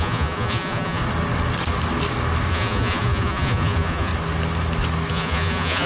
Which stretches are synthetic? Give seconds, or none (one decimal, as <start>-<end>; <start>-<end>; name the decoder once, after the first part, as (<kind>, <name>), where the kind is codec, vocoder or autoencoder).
0.0-1.0 (vocoder, Vocos); 2.5-4.1; 5.1-5.9